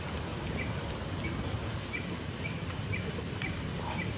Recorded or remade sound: recorded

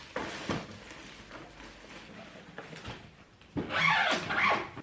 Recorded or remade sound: recorded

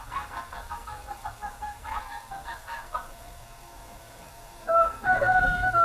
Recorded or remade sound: remade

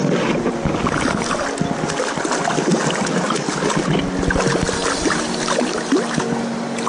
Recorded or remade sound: recorded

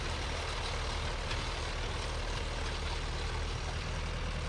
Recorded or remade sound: recorded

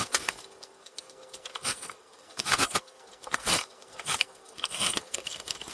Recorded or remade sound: remade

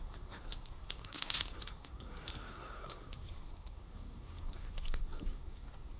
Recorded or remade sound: remade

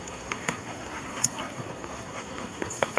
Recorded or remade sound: remade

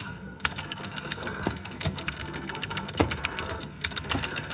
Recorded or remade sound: remade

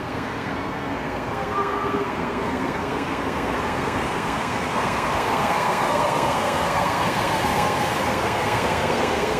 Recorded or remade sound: remade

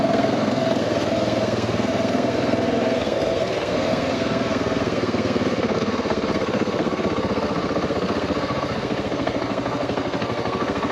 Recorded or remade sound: remade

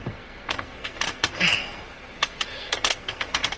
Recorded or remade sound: remade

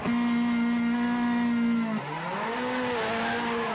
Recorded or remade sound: recorded